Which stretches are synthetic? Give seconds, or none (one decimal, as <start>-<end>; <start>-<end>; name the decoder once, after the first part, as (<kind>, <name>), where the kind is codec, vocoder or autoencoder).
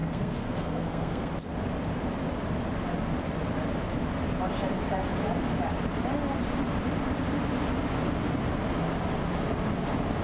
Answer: 0.0-1.3 (codec, SNAC)